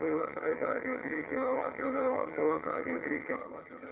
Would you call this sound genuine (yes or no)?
no